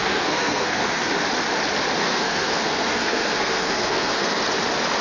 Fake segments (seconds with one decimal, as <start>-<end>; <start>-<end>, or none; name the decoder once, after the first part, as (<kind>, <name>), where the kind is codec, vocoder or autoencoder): 0.0-1.1 (codec, SNAC); 2.0-4.4